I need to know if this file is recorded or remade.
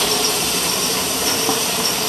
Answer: remade